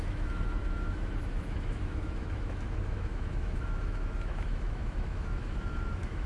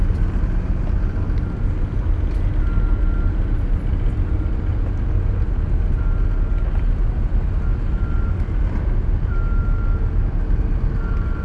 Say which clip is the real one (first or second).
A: second